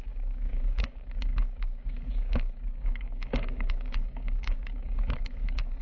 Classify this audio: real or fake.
fake